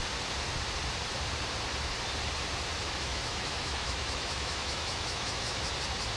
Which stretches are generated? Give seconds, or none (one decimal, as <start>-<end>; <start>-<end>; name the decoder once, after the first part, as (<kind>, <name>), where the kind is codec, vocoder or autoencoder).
3.1-5.7 (autoencoder, DAC-VAE)